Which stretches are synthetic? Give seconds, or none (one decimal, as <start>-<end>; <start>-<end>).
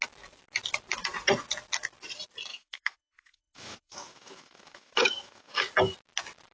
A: 2.5-5.6